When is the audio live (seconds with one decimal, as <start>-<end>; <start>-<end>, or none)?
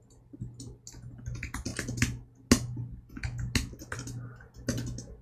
0.0-5.2